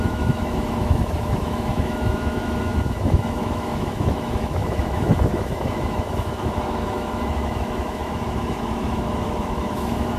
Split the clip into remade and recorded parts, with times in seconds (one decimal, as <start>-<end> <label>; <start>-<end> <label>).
0.0-10.2 remade